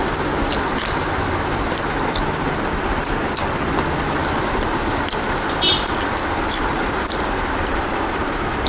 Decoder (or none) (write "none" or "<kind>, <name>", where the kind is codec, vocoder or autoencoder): none